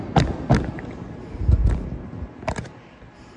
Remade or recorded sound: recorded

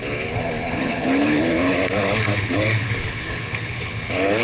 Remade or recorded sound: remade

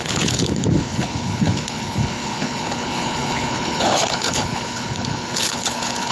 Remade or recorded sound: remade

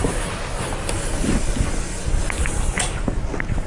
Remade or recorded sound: recorded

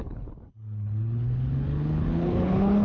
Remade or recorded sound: remade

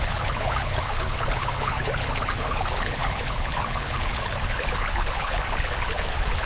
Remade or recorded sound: remade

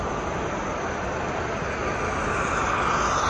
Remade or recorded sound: recorded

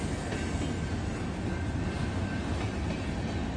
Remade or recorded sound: recorded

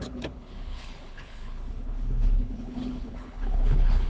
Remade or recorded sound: remade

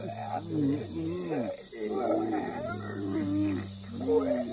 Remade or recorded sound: recorded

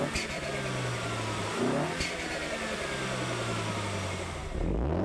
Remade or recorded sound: recorded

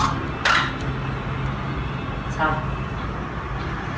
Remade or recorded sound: recorded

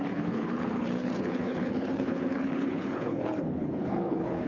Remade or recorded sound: remade